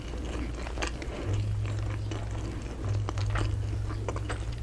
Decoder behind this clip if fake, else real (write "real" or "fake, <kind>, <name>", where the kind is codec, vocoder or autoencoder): real